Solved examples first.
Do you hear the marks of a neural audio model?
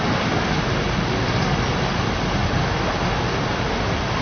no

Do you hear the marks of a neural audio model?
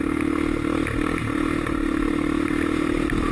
no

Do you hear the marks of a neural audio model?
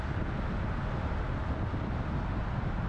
no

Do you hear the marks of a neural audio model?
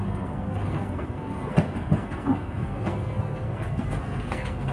yes